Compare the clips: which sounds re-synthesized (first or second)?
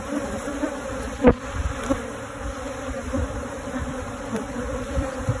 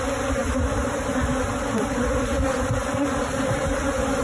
first